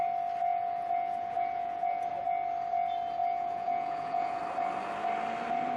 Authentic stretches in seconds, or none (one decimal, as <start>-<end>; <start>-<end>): 0.0-0.5; 2.1-3.2; 4.4-5.8